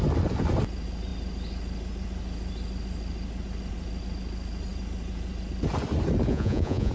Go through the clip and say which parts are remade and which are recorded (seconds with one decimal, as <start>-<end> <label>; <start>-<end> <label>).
0.0-6.3 recorded; 6.3-6.9 remade